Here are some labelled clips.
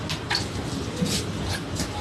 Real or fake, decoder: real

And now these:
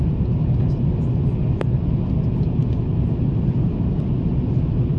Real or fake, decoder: real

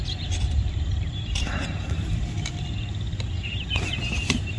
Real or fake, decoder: fake, vocoder, BigVGAN v2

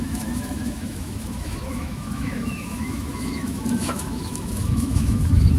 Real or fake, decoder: fake, autoencoder, DAC-VAE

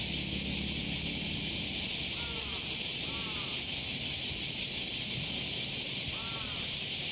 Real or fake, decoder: real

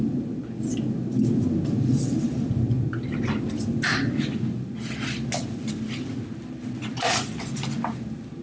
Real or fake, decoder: real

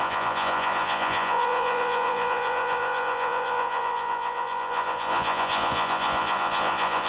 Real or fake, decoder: fake, vocoder, Vocos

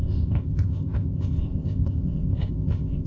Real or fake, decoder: fake, codec, ZipCodec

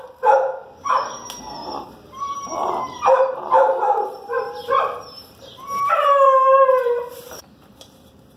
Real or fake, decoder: fake, vocoder, BigVGAN v2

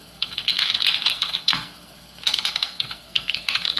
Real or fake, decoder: fake, codec, SNAC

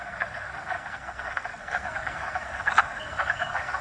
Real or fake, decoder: fake, codec, SNAC